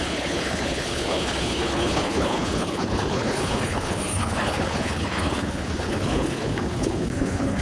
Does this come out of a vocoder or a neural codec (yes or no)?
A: yes